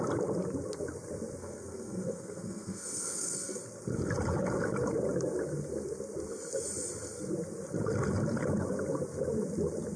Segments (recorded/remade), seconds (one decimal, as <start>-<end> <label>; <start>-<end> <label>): 0.0-1.4 recorded; 1.4-3.6 remade; 3.6-10.0 recorded